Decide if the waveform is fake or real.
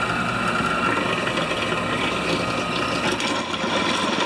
real